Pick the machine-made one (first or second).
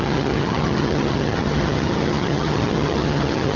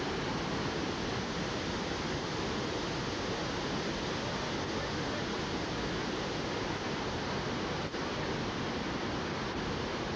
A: first